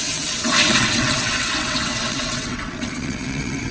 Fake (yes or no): yes